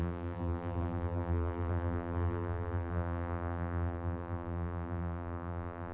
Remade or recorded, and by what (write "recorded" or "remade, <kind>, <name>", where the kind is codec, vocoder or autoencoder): remade, vocoder, BigVGAN v2